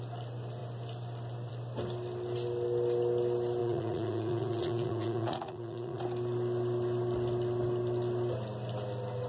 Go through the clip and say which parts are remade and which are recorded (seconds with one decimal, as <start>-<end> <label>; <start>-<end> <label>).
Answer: 0.0-3.6 recorded; 3.6-6.0 remade; 6.0-9.3 recorded

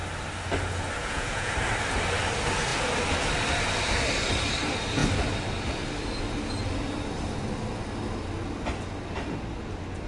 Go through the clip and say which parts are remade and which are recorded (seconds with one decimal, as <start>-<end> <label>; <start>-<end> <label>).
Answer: 0.0-1.0 recorded; 1.0-1.5 remade; 1.5-10.1 recorded

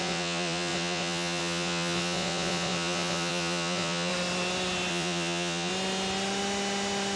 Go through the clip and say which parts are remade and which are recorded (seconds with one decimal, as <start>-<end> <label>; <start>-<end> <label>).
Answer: 0.0-4.1 remade; 4.1-4.9 recorded; 4.9-5.7 remade; 5.7-7.2 recorded

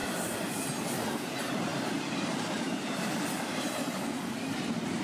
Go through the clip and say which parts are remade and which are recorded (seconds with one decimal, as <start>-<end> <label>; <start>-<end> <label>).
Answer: 0.0-0.6 remade; 0.6-1.7 recorded; 1.7-5.0 remade

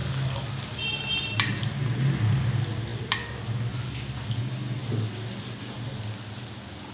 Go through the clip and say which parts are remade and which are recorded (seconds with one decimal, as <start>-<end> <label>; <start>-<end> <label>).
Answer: 0.0-6.9 recorded